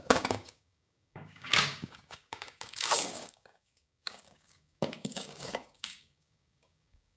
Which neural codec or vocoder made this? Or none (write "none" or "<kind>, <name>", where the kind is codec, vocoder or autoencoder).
codec, DAC